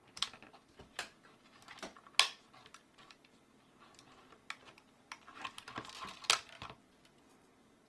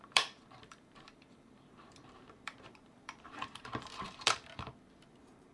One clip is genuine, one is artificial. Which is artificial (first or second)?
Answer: second